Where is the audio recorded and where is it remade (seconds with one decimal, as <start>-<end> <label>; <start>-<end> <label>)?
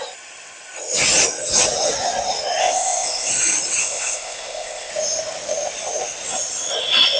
0.0-2.6 recorded; 2.6-3.3 remade; 3.3-3.8 recorded; 3.8-4.9 remade; 4.9-7.2 recorded